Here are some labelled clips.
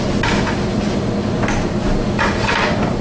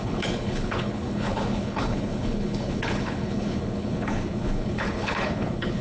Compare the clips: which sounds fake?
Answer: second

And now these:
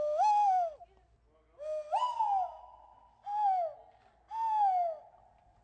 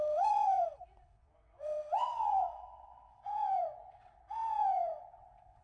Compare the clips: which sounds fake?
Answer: second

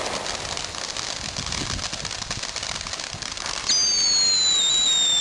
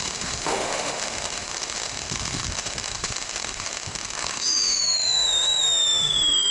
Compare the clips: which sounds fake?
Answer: second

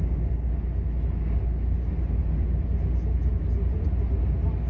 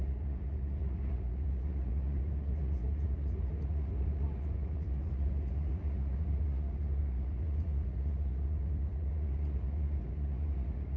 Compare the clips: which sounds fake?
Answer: second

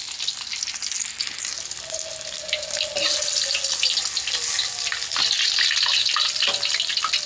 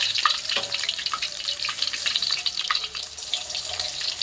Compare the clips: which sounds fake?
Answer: second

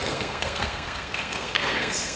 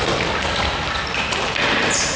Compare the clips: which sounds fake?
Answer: first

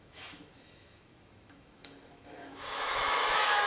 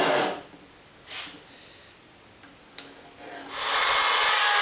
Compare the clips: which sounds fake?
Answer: first